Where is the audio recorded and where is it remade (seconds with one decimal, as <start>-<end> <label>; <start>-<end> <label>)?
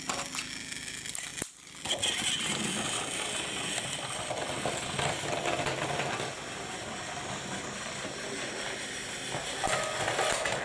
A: 0.0-10.6 recorded